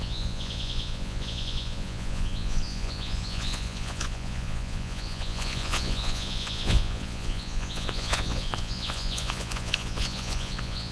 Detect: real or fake fake